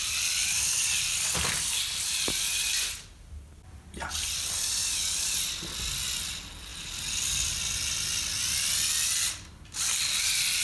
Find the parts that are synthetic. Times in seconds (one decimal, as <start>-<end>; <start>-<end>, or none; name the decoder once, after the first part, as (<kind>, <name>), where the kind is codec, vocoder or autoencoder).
none